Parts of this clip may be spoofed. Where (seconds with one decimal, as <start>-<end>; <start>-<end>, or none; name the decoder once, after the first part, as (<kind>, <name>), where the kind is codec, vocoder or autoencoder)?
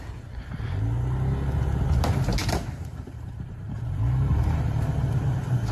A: 2.4-5.1 (vocoder, BigVGAN v2)